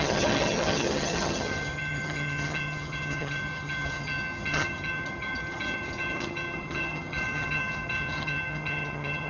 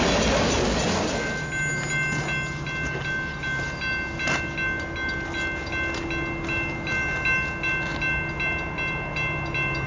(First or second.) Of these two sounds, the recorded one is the second